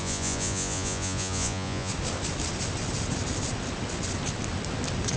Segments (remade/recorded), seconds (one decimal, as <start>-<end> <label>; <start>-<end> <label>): 0.0-1.9 remade; 1.9-5.2 recorded